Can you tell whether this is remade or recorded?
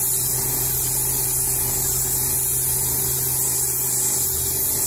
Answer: recorded